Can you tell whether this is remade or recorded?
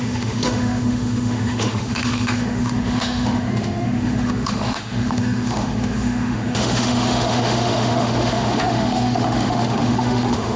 remade